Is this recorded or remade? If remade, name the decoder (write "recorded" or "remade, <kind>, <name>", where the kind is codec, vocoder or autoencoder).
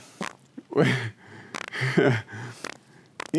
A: recorded